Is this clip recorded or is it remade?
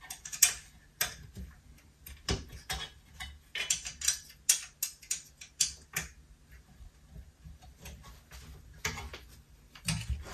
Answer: recorded